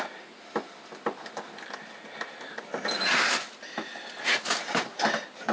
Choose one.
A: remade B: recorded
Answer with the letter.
B